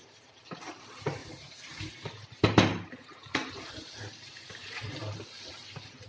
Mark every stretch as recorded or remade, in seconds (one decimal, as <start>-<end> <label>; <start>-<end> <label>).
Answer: 0.0-0.7 remade; 0.7-1.2 recorded; 1.2-4.9 remade; 4.9-6.1 recorded